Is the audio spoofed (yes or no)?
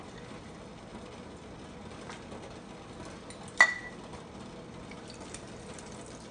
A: no